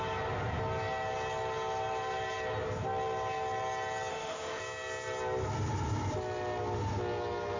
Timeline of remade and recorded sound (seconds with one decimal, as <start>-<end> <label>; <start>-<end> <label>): 0.0-4.1 recorded; 4.1-4.6 remade; 4.6-7.6 recorded